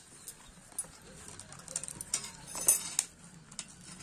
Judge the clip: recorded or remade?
recorded